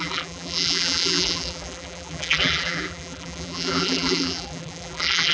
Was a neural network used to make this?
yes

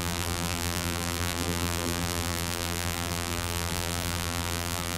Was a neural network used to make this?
yes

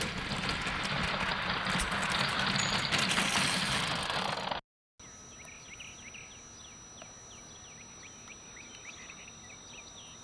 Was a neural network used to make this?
no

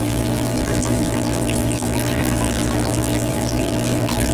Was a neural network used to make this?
yes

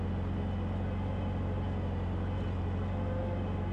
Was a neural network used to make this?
no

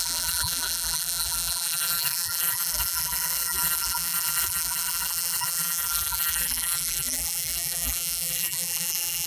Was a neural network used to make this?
yes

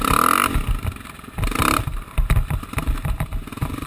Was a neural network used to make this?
no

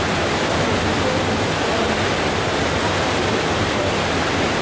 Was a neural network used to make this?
yes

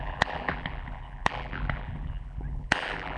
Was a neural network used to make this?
yes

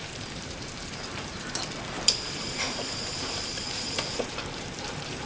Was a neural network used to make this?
yes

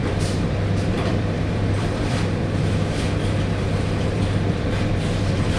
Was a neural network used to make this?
yes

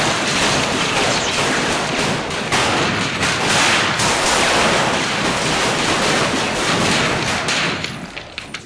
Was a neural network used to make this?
no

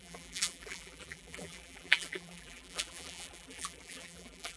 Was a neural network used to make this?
yes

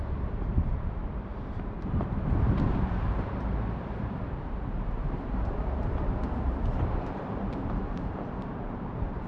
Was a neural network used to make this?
yes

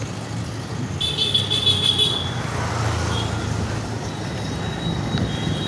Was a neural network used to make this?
no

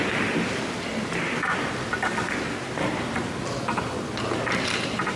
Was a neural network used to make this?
no